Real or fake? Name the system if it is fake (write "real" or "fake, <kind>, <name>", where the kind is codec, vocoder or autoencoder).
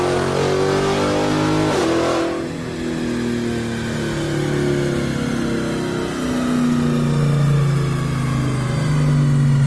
real